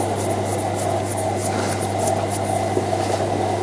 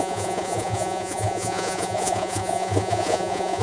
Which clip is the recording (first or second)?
first